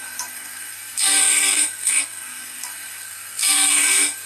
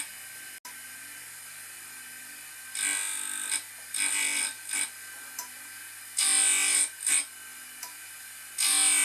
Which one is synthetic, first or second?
first